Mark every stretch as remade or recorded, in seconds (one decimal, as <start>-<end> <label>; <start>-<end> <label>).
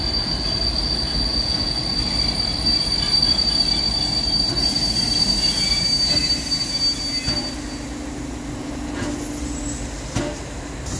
0.0-1.3 recorded; 1.3-1.8 remade; 1.8-11.0 recorded